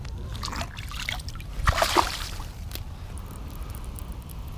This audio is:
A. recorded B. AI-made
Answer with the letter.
A